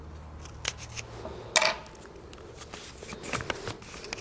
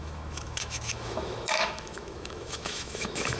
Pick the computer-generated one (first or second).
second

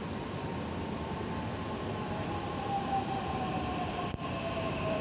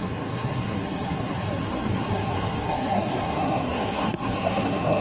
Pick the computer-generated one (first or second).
second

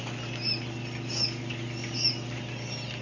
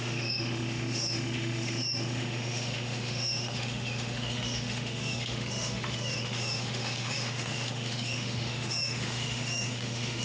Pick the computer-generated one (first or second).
second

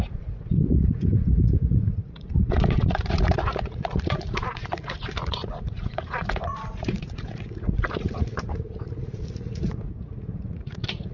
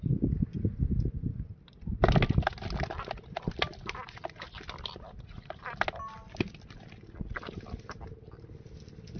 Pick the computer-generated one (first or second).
first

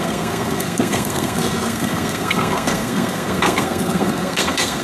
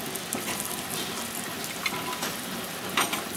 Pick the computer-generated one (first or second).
first